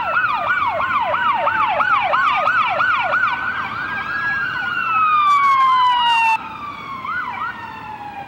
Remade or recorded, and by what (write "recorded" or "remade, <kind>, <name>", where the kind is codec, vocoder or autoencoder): remade, vocoder, BigVGAN v2